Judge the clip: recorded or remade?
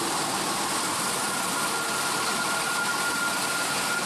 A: remade